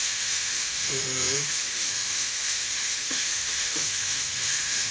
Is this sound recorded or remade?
remade